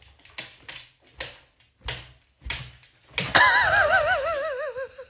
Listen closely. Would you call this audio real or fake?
real